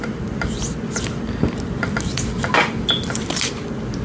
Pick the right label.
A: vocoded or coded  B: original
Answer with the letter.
B